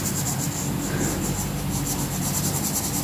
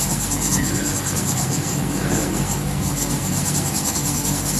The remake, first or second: second